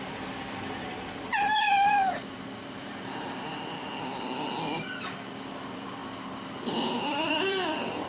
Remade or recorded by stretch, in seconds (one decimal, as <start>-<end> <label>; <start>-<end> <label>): 0.0-6.0 remade; 6.0-6.7 recorded; 6.7-8.1 remade